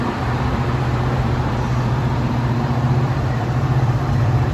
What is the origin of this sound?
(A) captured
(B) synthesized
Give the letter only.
B